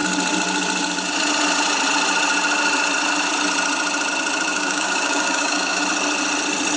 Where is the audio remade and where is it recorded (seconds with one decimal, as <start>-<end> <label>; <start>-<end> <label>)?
0.0-4.5 recorded; 4.5-5.8 remade; 5.8-6.8 recorded